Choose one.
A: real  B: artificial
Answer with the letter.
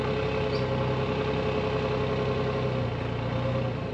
A